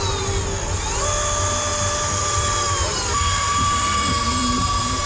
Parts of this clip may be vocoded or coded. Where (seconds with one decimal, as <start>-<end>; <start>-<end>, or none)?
1.7-5.1